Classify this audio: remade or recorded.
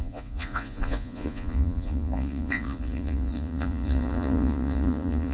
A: remade